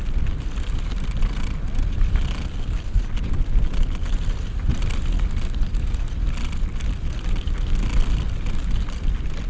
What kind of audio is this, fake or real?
real